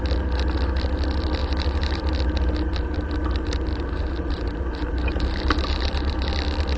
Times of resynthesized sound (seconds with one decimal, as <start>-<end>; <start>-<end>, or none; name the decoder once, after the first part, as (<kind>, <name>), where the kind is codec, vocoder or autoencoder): 1.4-2.0 (vocoder, BigVGAN v2); 3.7-6.3

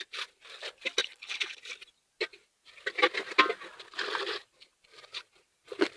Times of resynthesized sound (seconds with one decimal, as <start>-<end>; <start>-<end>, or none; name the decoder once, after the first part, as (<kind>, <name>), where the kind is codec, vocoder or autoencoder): 1.0-1.6 (codec, HILCodec)

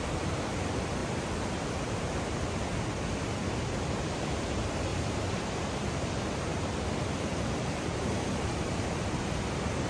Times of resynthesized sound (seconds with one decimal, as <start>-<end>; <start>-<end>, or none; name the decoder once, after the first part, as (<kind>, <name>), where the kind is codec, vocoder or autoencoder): 0.0-1.0 (vocoder, BigVGAN v2); 3.5-4.9; 5.7-9.9

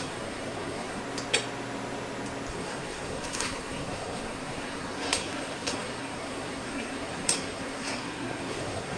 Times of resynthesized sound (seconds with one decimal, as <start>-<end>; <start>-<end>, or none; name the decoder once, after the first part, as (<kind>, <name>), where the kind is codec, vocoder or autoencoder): 0.0-1.0 (codec, SNAC); 2.5-9.0

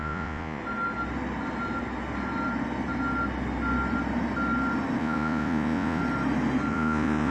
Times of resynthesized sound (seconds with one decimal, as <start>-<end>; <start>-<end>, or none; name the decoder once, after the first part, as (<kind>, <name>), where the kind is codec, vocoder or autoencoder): 0.0-0.6 (vocoder, Vocos); 5.0-6.0; 6.7-7.3

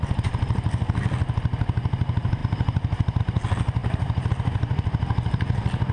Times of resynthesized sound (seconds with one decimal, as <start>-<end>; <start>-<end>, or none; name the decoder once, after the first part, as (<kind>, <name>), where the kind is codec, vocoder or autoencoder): none

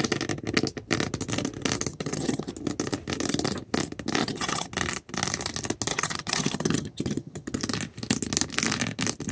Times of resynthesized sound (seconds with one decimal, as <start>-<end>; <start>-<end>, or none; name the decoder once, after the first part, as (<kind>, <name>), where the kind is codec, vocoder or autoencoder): 1.9-2.5 (vocoder, HiFi-GAN); 4.2-4.7; 5.9-7.6